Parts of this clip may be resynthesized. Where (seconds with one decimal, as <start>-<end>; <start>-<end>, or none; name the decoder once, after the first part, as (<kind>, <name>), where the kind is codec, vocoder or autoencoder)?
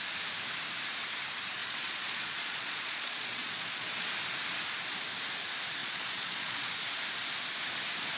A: 1.6-4.1 (vocoder, Vocos); 5.8-6.7